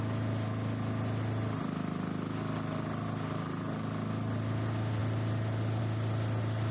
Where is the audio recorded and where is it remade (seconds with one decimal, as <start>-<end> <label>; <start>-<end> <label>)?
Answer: 0.0-6.7 recorded